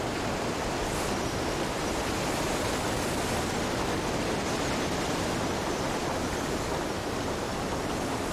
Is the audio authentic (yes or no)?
yes